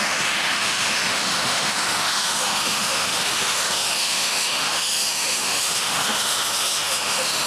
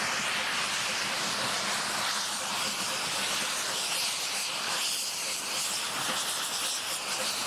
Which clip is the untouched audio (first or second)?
second